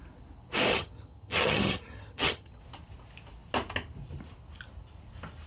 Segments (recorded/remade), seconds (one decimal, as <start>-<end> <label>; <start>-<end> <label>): 0.0-0.7 recorded; 0.7-2.6 remade; 2.6-5.5 recorded